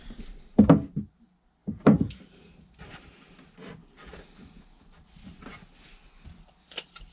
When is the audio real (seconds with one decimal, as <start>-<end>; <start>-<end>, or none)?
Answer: 0.0-1.6; 2.4-7.1